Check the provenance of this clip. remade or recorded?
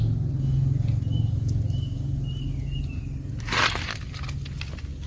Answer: recorded